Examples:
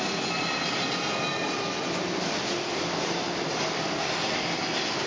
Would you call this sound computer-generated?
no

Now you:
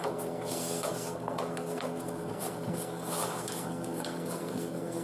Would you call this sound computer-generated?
yes